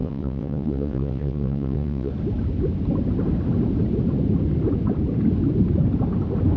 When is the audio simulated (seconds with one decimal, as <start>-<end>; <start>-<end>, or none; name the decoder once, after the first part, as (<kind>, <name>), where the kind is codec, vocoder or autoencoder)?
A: 0.0-2.1 (vocoder, WaveNeXt)